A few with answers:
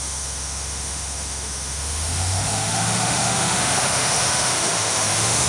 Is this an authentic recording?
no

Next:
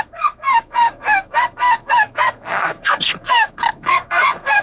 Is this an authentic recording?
no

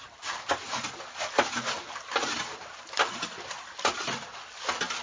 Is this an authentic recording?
yes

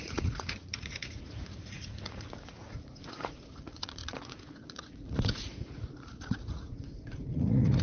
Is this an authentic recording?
no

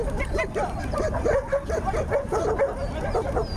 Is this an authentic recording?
yes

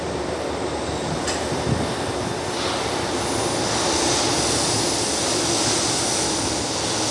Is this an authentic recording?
yes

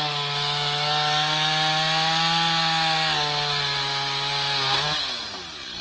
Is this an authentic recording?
yes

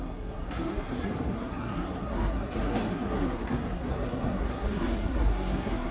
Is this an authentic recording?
no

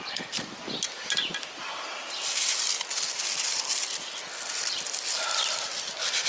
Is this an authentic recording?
yes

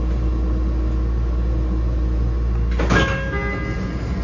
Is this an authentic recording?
yes